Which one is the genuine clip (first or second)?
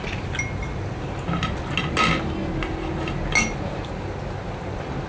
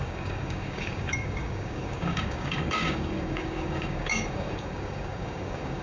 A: first